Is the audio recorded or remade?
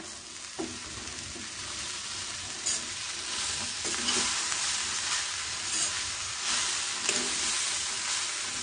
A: recorded